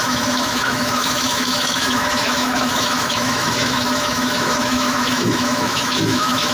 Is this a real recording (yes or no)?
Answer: no